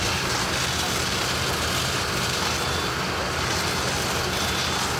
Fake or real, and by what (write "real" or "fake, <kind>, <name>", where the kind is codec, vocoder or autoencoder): real